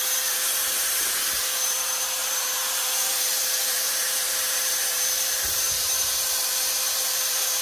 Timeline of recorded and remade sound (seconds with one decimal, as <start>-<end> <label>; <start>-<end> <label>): 0.0-7.6 remade